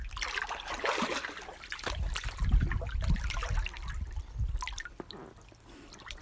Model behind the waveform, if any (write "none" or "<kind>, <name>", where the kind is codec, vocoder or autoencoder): none